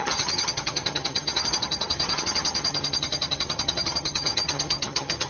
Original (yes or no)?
no